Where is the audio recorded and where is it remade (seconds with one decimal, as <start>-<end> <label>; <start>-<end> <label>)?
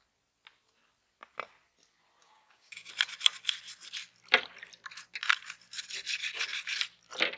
0.0-2.2 recorded; 2.2-2.9 remade; 2.9-7.4 recorded